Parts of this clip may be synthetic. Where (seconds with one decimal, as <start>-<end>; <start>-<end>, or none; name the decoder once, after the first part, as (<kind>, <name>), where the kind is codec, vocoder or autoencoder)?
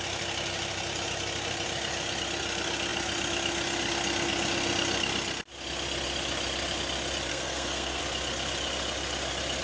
7.3-8.0 (codec, SNAC)